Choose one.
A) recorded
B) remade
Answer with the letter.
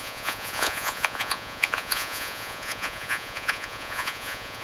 B